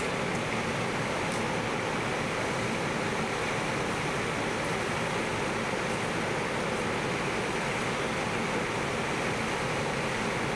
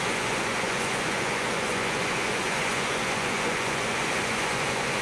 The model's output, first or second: second